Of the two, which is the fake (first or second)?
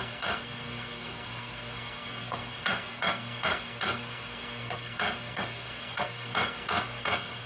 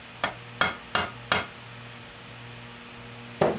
first